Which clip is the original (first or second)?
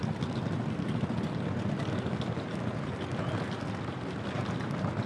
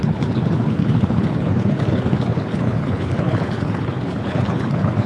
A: first